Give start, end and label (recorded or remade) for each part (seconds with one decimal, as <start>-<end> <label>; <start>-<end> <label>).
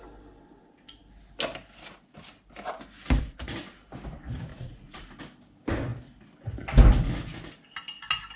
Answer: 0.0-4.5 recorded; 4.5-5.2 remade; 5.2-8.4 recorded